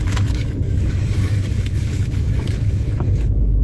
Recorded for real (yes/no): no